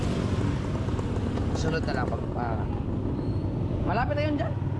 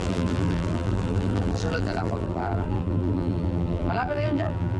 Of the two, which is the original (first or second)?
first